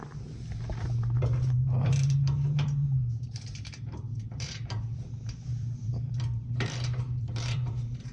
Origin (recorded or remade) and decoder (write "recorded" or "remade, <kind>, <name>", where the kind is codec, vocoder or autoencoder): remade, vocoder, BigVGAN v2